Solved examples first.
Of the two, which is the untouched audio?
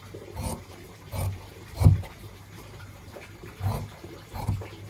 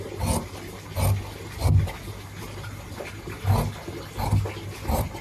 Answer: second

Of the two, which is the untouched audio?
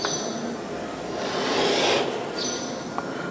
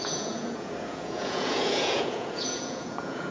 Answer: first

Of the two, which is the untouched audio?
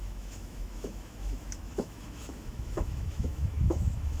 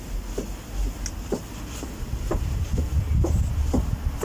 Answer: second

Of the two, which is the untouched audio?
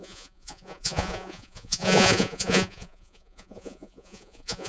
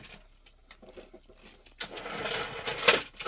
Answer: second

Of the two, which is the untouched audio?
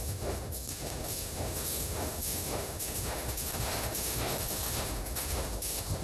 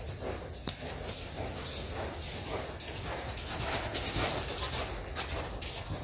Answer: second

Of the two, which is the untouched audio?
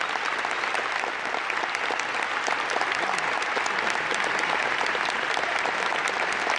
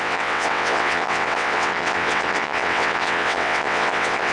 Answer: first